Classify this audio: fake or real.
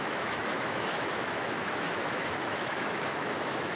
fake